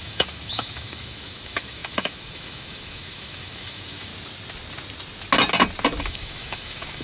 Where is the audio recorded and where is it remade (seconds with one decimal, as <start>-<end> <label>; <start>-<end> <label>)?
0.0-4.1 remade; 4.1-6.0 recorded; 6.0-7.0 remade